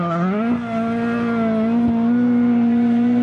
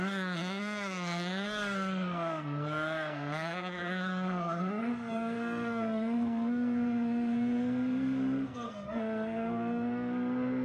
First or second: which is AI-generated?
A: second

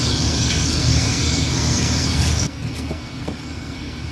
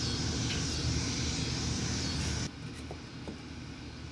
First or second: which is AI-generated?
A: first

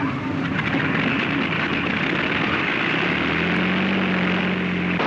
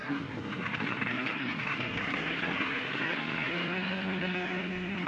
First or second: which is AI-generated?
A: second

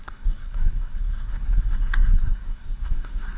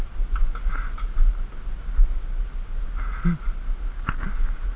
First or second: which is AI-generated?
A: first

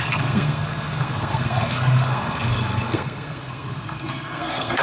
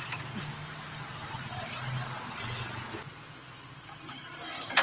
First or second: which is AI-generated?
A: first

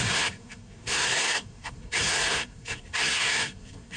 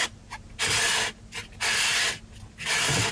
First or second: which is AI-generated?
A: first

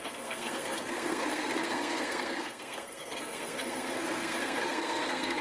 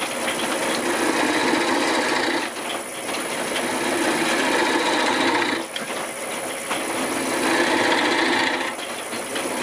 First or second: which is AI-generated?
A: first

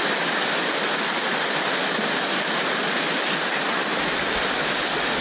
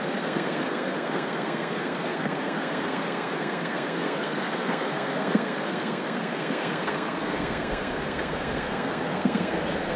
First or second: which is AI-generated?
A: second